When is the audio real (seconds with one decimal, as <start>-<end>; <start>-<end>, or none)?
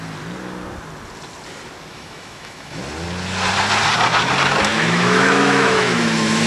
0.0-1.9; 2.8-4.7